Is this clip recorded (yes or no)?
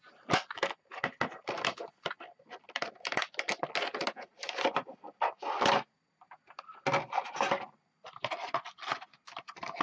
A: yes